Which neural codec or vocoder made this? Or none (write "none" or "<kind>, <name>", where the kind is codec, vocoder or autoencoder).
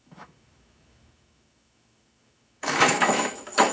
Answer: autoencoder, DAC-VAE